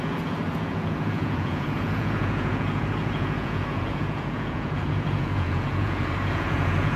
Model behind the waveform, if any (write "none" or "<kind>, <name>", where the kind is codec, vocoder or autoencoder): vocoder, Vocos